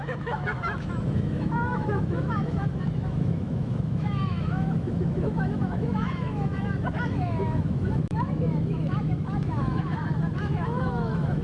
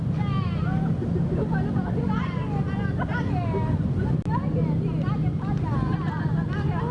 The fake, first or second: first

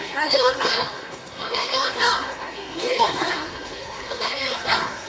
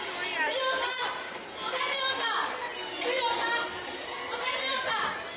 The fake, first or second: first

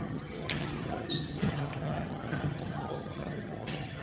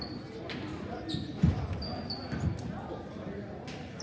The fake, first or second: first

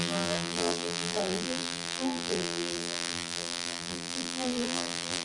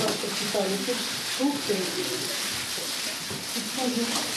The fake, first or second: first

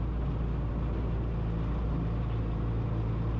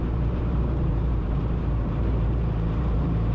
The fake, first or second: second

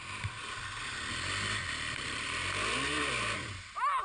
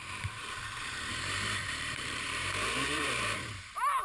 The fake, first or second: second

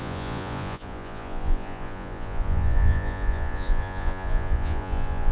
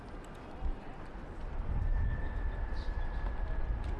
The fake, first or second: first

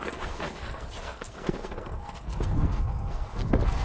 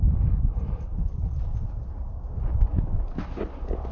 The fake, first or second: first